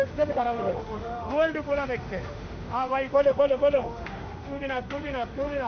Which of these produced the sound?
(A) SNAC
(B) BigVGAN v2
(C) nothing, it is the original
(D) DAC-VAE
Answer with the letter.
D